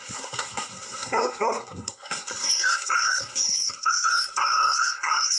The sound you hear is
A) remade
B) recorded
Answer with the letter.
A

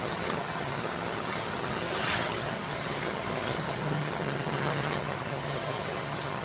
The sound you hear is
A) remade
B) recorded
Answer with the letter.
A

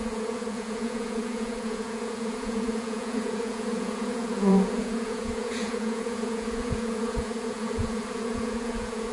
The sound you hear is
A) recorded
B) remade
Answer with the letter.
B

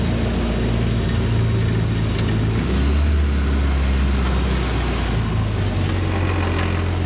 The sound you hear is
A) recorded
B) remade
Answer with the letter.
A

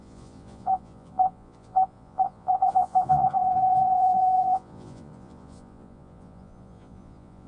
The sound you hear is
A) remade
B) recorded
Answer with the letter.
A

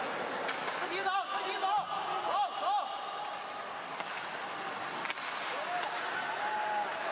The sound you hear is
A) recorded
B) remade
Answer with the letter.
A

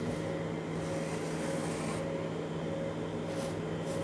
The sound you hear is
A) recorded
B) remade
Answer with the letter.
A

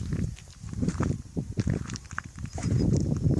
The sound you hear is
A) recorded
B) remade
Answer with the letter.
B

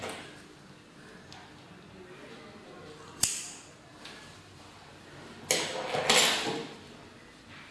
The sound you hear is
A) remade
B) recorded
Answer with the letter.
B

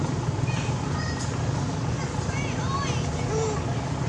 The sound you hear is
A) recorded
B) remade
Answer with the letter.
A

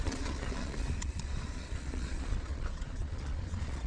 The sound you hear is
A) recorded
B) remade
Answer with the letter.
B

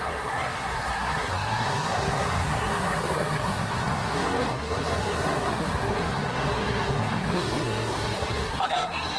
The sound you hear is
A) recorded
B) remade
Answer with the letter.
B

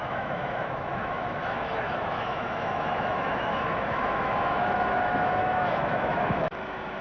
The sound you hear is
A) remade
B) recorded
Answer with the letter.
A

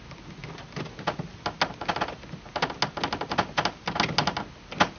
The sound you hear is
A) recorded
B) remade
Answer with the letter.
A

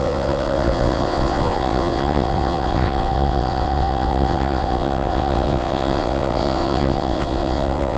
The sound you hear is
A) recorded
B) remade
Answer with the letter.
B